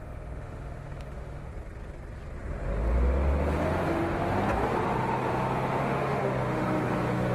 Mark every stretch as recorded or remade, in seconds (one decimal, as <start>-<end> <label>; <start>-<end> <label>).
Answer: 0.0-1.5 remade; 1.5-5.8 recorded; 5.8-7.3 remade